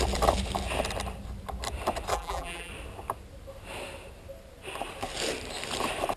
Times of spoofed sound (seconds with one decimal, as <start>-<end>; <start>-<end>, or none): 2.1-2.7